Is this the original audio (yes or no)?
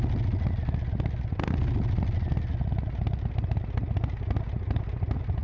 yes